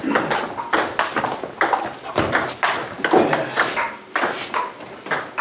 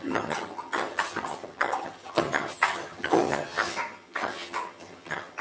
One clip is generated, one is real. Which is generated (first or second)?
second